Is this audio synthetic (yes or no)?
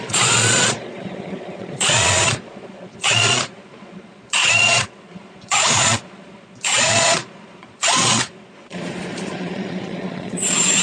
yes